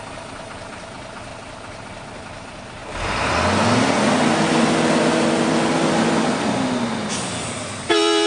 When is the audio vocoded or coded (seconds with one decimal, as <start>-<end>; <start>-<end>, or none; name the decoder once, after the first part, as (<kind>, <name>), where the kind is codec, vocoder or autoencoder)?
0.0-1.3 (vocoder, BigVGAN v2); 2.2-2.8; 7.8-8.3